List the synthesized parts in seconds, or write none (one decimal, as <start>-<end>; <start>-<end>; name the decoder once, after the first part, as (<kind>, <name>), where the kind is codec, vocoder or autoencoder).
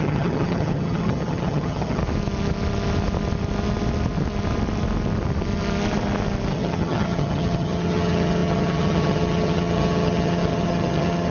0.0-2.0 (vocoder, HiFi-GAN); 6.5-11.3